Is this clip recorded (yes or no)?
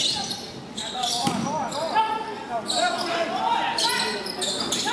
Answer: yes